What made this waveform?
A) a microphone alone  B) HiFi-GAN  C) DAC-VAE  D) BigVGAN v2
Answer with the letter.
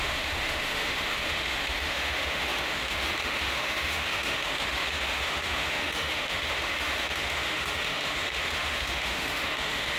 C